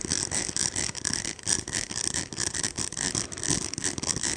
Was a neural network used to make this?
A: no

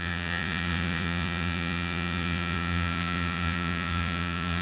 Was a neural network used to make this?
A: yes